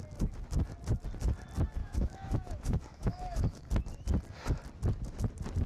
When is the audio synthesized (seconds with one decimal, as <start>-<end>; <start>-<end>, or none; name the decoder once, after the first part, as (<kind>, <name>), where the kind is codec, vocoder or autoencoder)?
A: 1.8-3.7 (autoencoder, DAC-VAE)